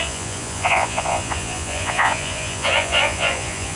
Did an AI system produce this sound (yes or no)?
yes